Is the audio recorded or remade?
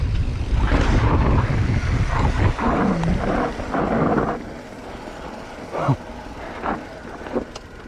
recorded